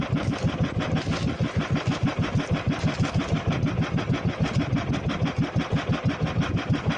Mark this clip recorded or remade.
recorded